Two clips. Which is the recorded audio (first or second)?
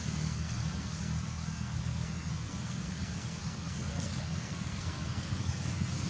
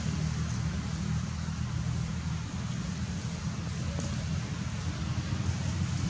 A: second